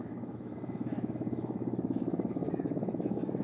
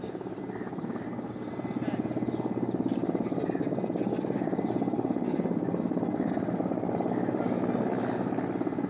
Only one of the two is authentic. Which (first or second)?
second